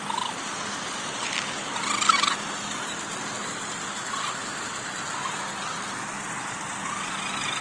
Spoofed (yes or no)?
no